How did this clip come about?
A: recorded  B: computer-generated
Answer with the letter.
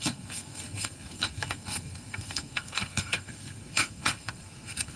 B